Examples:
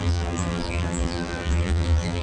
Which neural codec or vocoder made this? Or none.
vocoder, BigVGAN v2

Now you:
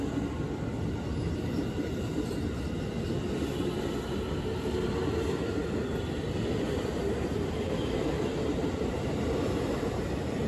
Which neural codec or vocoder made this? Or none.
none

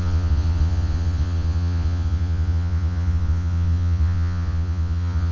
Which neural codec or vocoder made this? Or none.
vocoder, Vocos